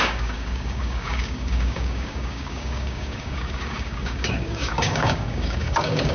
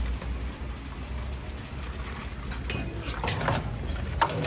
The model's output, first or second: first